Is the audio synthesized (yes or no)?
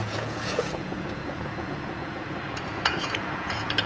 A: yes